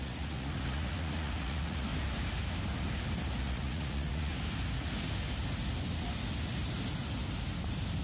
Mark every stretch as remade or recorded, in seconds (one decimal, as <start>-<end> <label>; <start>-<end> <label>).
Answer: 0.0-1.9 remade; 1.9-3.4 recorded; 3.4-4.3 remade; 4.3-8.0 recorded